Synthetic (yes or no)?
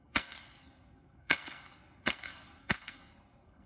yes